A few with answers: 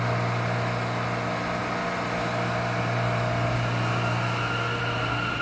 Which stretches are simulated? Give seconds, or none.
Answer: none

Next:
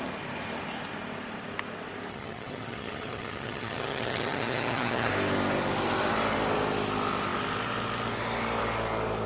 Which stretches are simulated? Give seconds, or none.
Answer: 2.1-5.1 (vocoder, HiFi-GAN)

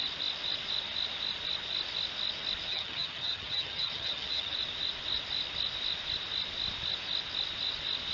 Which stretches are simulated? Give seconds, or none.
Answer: 2.7-4.5 (vocoder, HiFi-GAN)

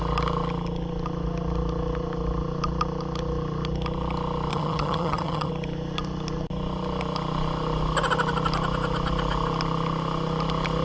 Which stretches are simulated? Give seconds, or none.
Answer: 4.5-5.5 (vocoder, HiFi-GAN)